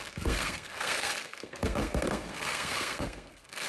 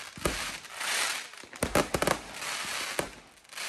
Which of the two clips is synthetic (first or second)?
first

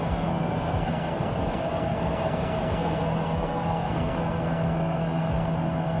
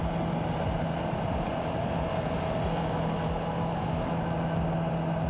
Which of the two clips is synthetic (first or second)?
first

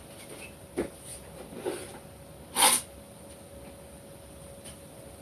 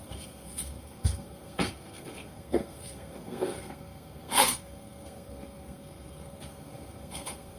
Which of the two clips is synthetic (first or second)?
second